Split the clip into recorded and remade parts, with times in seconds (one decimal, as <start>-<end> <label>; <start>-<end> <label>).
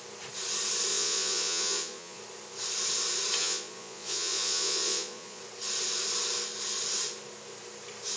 0.0-0.9 recorded; 0.9-2.2 remade; 2.2-3.4 recorded; 3.4-5.4 remade; 5.4-8.2 recorded